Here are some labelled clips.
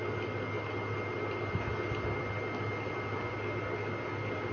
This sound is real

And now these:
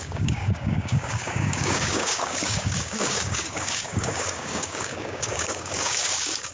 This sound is fake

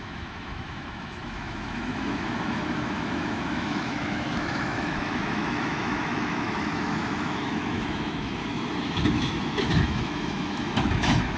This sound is fake